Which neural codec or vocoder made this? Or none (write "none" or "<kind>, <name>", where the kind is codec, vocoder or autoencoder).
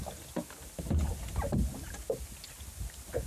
none